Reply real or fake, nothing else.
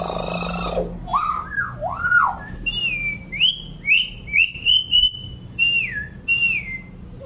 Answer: real